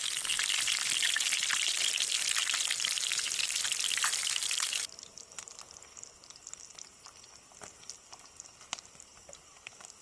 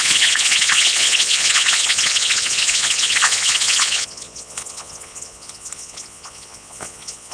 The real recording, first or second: first